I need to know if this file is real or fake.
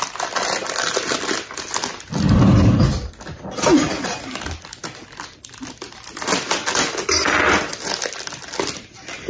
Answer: real